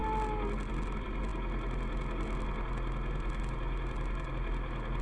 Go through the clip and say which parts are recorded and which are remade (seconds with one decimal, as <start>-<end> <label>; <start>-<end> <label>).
0.0-5.0 recorded